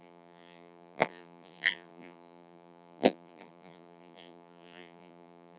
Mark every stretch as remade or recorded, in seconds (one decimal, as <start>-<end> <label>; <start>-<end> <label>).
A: 0.0-5.6 remade